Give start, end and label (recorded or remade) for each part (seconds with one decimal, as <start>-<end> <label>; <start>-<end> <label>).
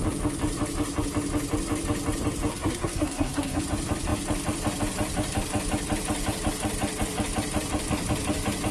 0.0-2.5 recorded; 2.5-3.6 remade; 3.6-8.7 recorded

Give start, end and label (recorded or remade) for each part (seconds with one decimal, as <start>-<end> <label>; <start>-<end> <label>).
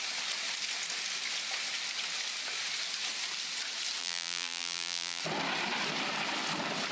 0.0-4.0 recorded; 4.0-5.2 remade; 5.2-6.9 recorded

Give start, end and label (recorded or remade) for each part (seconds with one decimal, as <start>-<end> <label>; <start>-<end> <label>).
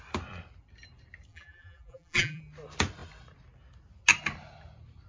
0.0-1.3 recorded; 1.3-2.4 remade; 2.4-5.1 recorded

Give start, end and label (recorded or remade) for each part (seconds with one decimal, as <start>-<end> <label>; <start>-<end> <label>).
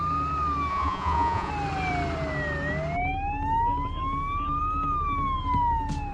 0.0-0.7 recorded; 0.7-1.5 remade; 1.5-6.1 recorded